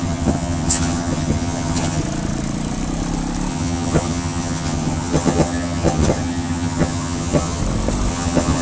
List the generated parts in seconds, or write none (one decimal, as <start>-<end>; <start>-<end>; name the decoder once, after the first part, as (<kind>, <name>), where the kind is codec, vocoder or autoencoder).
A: 0.0-2.0 (vocoder, HiFi-GAN); 3.5-7.6; 8.1-8.6

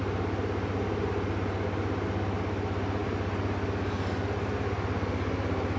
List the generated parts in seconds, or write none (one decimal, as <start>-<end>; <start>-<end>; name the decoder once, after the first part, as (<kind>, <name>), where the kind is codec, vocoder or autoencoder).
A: none